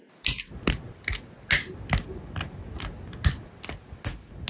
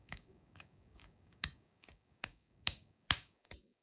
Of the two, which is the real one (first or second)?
first